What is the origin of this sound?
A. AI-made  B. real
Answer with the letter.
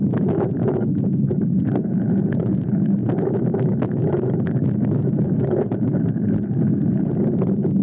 A